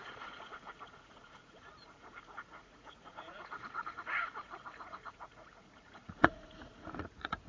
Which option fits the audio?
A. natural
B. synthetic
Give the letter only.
B